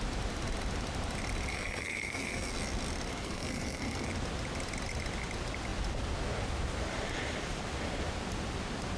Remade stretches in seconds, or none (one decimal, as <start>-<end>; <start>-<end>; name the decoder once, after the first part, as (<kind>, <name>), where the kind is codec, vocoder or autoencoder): 1.5-2.5 (codec, SNAC); 3.1-4.1